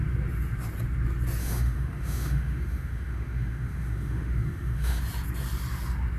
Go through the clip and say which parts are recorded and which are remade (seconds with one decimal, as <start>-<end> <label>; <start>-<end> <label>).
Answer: 0.0-1.4 recorded; 1.4-5.0 remade; 5.0-6.2 recorded